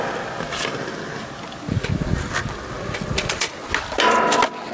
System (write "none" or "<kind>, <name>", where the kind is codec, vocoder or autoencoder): none